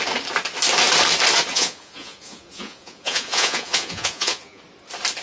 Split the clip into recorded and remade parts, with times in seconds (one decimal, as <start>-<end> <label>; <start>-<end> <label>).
0.0-1.5 recorded; 1.5-4.6 remade; 4.6-5.2 recorded